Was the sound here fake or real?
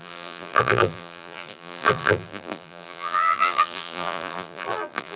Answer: fake